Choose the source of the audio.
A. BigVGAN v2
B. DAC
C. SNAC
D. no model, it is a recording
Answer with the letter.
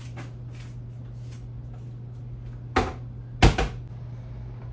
D